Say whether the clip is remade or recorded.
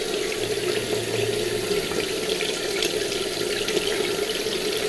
recorded